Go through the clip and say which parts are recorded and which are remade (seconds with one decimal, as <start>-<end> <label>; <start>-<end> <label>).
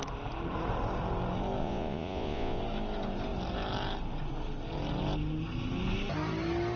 0.0-1.6 recorded; 1.6-2.6 remade; 2.6-6.8 recorded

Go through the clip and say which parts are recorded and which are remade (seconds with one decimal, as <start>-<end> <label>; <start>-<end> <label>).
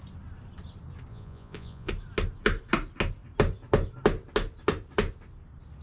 0.0-1.1 recorded; 1.1-1.9 remade; 1.9-5.8 recorded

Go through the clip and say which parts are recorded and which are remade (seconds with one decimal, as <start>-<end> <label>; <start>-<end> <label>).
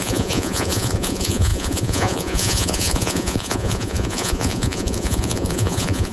0.0-6.1 remade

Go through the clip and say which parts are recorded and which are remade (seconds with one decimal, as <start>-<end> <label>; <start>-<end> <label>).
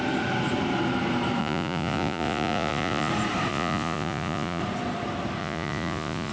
0.0-1.4 recorded; 1.4-3.1 remade; 3.1-3.5 recorded; 3.5-4.6 remade; 4.6-5.4 recorded; 5.4-6.3 remade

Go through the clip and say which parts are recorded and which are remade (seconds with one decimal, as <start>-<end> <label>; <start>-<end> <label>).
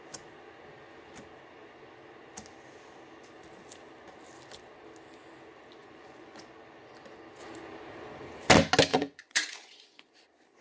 0.0-5.8 recorded; 5.8-6.4 remade; 6.4-8.9 recorded; 8.9-10.2 remade; 10.2-10.6 recorded